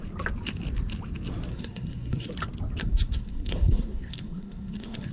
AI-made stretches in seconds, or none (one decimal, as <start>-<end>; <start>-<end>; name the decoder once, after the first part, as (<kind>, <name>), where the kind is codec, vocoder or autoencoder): 1.5-2.3 (codec, SNAC); 2.8-5.1